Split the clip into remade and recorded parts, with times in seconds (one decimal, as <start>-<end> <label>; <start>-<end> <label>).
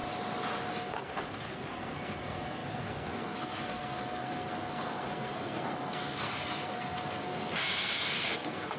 0.0-0.8 recorded; 0.8-8.8 remade